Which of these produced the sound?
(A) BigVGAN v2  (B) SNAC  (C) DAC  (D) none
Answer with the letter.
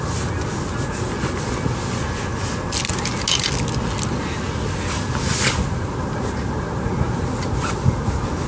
D